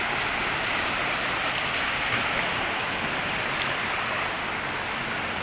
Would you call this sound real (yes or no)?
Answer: yes